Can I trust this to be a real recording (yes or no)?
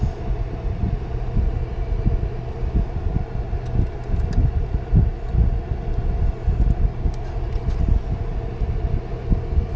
yes